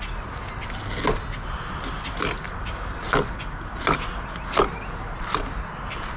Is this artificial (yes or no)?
no